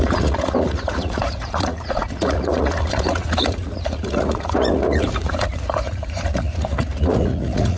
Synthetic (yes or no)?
yes